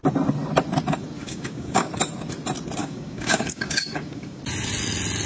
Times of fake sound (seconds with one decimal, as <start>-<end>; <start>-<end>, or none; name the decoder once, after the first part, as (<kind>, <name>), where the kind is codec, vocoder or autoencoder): 1.2-1.9 (codec, DAC); 2.8-4.4